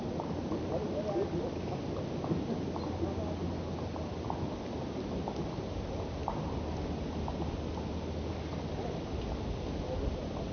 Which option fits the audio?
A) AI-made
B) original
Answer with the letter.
B